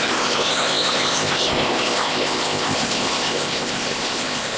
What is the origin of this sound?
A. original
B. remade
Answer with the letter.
B